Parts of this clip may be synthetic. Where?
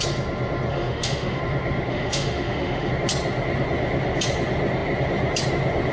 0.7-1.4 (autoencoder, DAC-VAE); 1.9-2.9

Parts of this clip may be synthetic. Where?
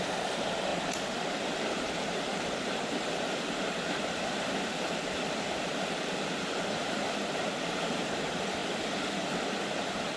0.0-8.6 (vocoder, BigVGAN v2); 9.1-10.2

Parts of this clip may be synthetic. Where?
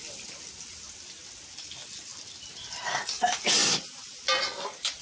none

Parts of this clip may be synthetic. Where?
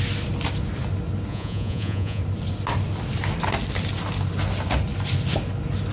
1.3-2.2 (vocoder, Vocos)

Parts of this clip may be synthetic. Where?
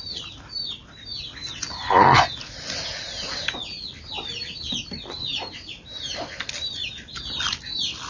none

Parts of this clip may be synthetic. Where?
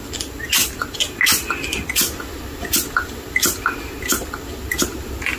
none